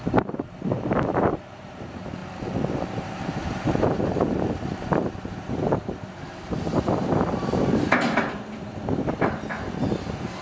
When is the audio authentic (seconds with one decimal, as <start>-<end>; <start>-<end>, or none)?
2.2-2.7; 8.7-9.9